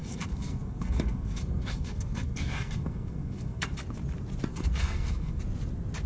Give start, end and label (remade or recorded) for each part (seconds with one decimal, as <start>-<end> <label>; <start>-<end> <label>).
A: 0.0-3.7 remade; 3.7-4.5 recorded; 4.5-5.4 remade; 5.4-6.1 recorded